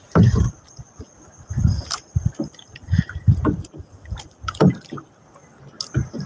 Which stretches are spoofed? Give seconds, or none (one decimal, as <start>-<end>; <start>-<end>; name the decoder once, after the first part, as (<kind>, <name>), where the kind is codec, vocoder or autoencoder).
none